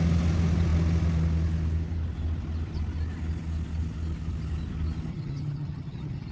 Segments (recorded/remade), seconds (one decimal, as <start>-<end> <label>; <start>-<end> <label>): 0.0-5.1 recorded; 5.1-6.3 remade